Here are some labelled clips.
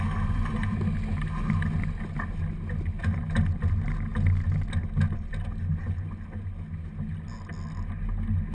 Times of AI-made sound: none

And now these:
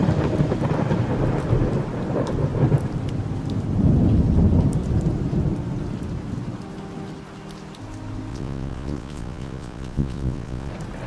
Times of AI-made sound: 8.3-10.7

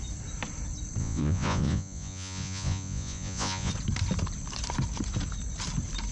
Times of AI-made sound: 1.0-3.7

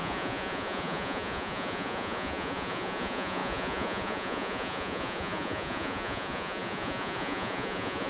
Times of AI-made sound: 0.0-8.1